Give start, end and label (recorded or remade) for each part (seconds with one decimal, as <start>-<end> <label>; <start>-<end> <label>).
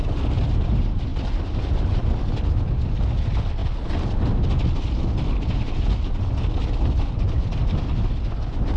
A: 0.0-1.1 recorded; 1.1-2.1 remade; 2.1-8.8 recorded